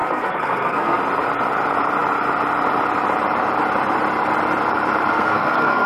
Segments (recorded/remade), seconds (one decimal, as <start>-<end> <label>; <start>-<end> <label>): 0.0-1.0 remade; 1.0-5.1 recorded; 5.1-5.9 remade

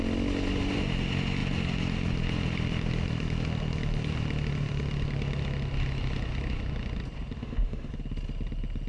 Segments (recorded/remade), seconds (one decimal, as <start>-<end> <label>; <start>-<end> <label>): 0.0-7.4 recorded; 7.4-7.9 remade; 7.9-8.9 recorded